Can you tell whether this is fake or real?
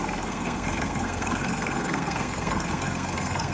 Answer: fake